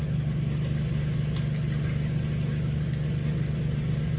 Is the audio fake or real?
real